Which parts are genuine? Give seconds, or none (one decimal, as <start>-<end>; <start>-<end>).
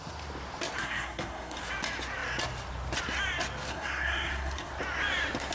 0.0-0.8; 1.6-3.7; 4.7-5.5